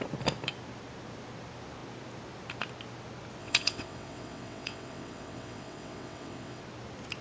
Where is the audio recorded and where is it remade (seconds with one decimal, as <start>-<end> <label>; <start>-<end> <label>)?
0.0-3.4 recorded; 3.4-6.6 remade; 6.6-7.2 recorded